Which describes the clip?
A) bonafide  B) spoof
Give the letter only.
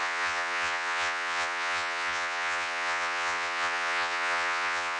B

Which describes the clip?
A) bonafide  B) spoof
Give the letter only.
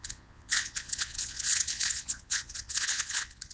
B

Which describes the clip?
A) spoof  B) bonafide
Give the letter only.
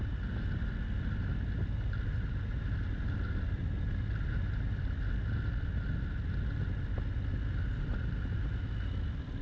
B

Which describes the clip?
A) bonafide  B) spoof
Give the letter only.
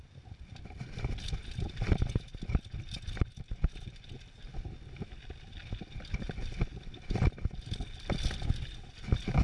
A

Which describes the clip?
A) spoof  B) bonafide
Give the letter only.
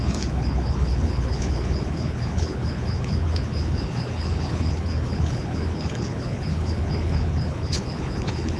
A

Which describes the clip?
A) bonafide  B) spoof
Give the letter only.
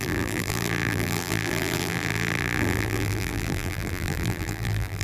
B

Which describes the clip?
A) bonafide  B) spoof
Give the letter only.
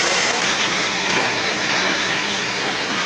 B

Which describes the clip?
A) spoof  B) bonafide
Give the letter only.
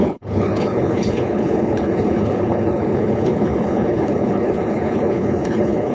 A